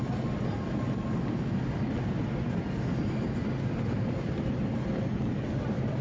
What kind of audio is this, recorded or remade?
recorded